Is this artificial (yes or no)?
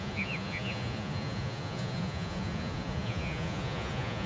yes